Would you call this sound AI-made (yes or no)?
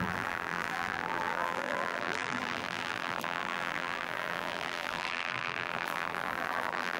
yes